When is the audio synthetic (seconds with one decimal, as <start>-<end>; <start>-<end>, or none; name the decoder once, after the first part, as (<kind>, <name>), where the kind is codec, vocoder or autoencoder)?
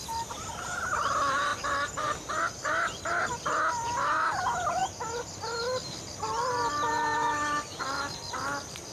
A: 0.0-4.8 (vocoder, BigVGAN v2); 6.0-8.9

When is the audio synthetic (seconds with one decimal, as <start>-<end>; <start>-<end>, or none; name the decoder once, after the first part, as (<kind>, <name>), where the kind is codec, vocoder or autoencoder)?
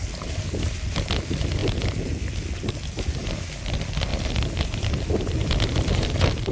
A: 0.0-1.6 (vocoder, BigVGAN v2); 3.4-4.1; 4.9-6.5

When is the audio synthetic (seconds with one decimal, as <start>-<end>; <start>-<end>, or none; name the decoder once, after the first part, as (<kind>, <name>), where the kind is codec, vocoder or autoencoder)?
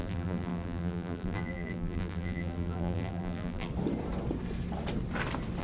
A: 0.0-3.7 (vocoder, BigVGAN v2)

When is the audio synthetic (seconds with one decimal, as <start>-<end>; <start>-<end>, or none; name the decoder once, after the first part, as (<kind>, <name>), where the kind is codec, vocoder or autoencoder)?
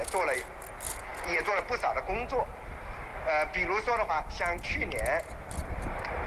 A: none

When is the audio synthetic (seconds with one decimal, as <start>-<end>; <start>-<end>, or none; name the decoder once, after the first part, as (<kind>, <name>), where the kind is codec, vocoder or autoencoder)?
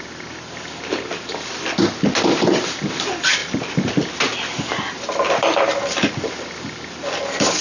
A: 3.4-4.2 (vocoder, BigVGAN v2)